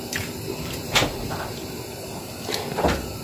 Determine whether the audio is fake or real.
fake